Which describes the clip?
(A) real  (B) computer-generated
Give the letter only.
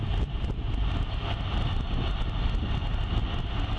A